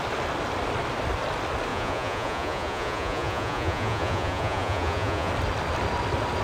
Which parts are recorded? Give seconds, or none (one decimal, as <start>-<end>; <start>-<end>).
0.0-1.7; 5.3-6.4